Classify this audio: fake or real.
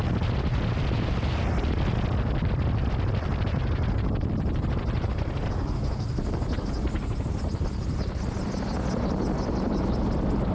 real